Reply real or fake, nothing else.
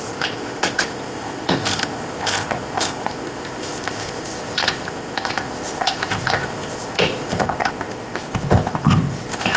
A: fake